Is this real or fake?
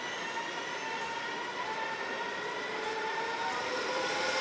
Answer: real